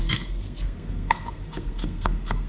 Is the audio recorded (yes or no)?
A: no